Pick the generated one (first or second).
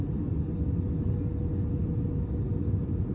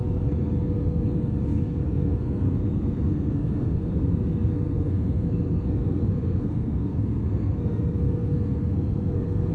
second